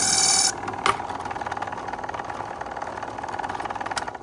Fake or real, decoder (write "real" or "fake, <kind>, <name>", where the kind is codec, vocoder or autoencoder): real